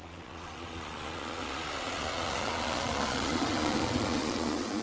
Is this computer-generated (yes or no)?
yes